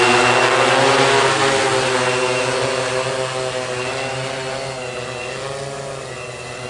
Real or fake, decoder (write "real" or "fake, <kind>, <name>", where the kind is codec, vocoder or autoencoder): real